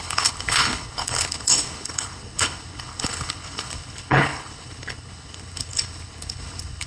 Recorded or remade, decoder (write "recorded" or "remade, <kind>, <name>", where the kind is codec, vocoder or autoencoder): remade, codec, HILCodec